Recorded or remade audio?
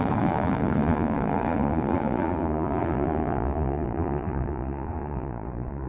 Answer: remade